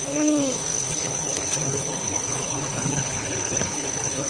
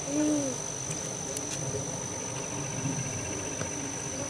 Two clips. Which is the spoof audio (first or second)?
first